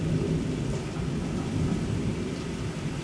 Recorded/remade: recorded